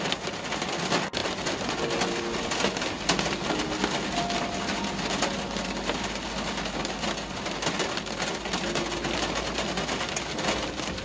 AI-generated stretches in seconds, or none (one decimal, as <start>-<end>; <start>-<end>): none